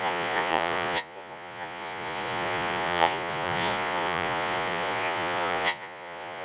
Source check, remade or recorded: remade